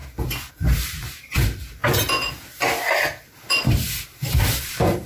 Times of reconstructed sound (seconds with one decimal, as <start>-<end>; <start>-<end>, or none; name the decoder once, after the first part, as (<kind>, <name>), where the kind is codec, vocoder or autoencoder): 0.5-1.8 (vocoder, BigVGAN v2); 4.6-5.1